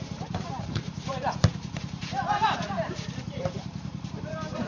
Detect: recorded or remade remade